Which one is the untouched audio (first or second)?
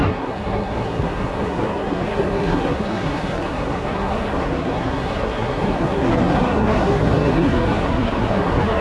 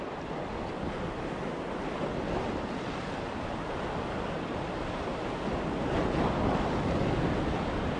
second